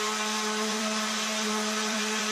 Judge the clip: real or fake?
fake